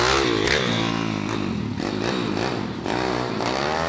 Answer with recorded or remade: recorded